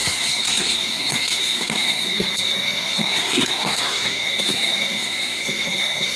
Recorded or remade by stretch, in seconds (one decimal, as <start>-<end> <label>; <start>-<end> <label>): 0.0-6.2 remade